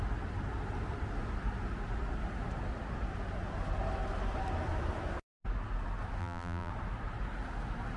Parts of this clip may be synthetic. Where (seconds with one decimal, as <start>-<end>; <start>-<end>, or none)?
6.2-6.7